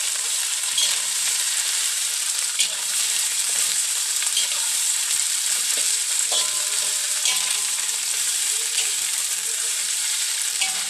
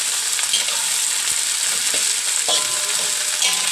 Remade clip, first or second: first